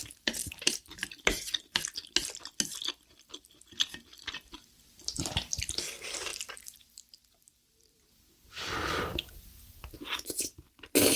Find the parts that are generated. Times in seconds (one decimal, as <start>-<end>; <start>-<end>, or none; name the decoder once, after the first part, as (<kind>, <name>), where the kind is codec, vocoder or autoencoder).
0.4-1.6 (vocoder, BigVGAN v2); 6.3-8.0